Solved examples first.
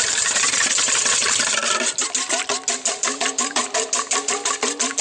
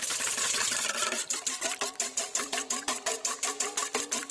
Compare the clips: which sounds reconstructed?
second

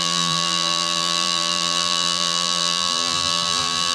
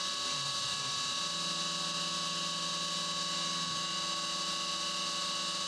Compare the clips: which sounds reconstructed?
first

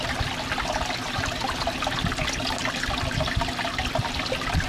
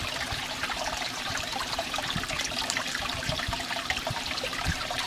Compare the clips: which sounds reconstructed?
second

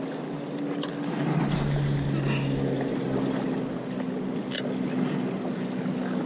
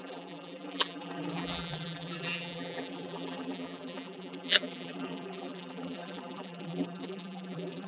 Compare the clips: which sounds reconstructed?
second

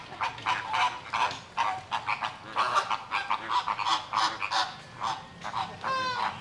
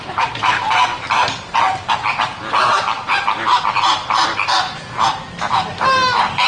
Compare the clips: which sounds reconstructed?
second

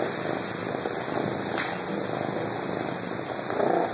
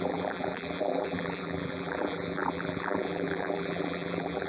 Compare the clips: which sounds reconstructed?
second